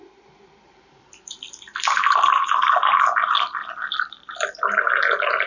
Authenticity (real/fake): fake